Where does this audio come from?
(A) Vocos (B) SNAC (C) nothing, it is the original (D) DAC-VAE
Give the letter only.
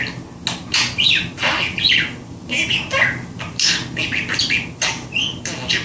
C